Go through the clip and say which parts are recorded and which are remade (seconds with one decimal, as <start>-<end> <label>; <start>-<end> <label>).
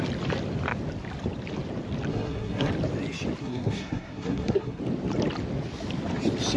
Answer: 0.0-2.1 recorded; 2.1-2.7 remade; 2.7-3.4 recorded; 3.4-4.8 remade; 4.8-6.6 recorded